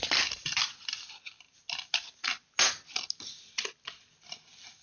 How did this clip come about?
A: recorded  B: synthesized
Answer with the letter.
A